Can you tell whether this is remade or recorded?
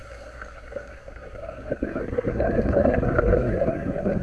remade